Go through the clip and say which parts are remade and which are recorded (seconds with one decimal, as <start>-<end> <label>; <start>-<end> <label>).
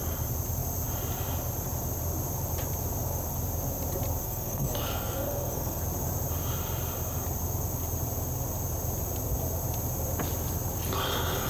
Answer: 0.0-4.2 recorded; 4.2-5.8 remade; 5.8-11.5 recorded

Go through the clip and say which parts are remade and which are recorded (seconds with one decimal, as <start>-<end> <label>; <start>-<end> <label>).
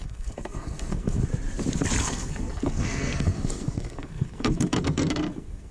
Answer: 0.0-1.3 remade; 1.3-2.0 recorded; 2.0-5.7 remade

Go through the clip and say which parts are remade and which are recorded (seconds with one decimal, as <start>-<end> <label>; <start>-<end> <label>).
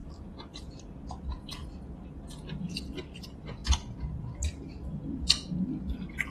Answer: 0.0-1.2 recorded; 1.2-1.6 remade; 1.6-2.2 recorded; 2.2-6.3 remade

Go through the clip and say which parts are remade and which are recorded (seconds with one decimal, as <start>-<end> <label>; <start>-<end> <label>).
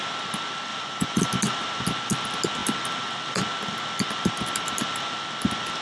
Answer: 0.0-0.7 recorded; 0.7-1.2 remade; 1.2-5.8 recorded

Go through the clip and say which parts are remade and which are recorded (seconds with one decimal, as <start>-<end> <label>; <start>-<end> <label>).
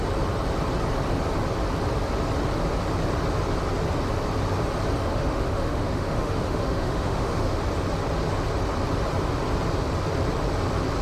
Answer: 0.0-5.1 recorded; 5.1-7.6 remade; 7.6-11.0 recorded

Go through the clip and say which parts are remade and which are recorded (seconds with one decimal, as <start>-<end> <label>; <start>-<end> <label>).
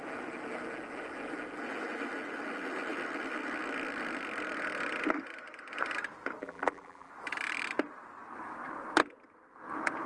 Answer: 0.0-6.4 recorded; 6.4-7.1 remade; 7.1-10.1 recorded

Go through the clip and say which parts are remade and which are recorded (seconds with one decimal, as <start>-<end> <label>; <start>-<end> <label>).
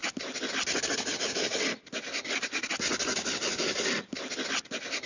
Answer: 0.0-5.1 recorded